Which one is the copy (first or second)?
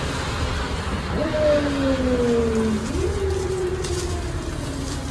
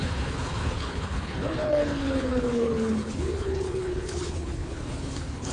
second